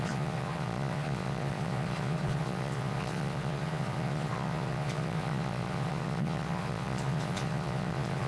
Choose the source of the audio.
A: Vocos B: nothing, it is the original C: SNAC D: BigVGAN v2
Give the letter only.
A